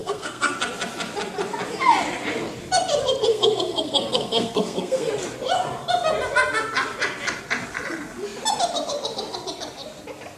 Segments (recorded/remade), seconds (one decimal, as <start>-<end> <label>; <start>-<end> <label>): 0.0-0.5 remade; 0.5-3.3 recorded; 3.3-5.1 remade; 5.1-10.4 recorded